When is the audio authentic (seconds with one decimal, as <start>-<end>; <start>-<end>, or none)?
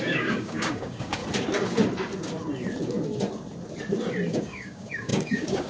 1.2-4.3